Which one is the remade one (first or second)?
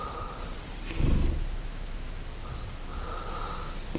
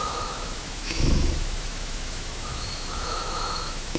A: second